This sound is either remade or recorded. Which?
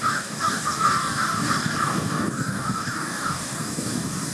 remade